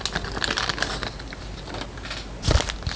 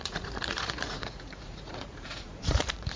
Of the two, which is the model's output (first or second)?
second